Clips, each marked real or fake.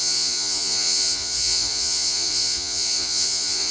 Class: fake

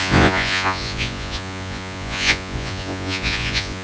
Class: fake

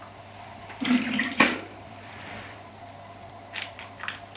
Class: fake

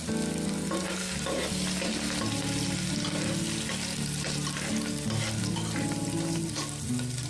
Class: real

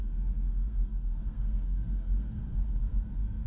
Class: fake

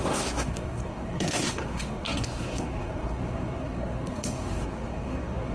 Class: fake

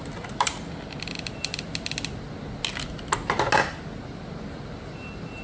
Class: real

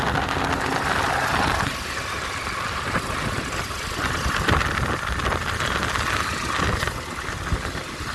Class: real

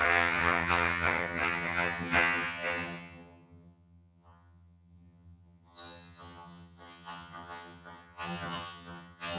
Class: fake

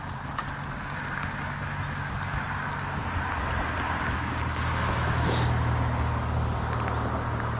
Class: real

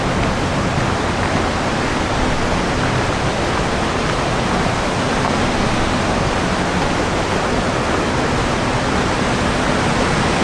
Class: real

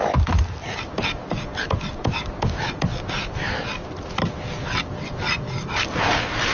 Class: real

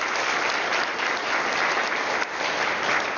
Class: real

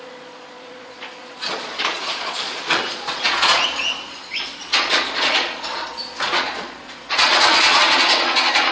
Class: fake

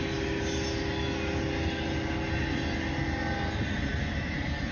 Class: real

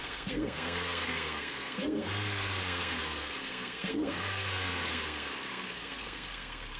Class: fake